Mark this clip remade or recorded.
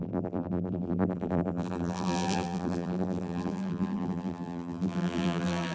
remade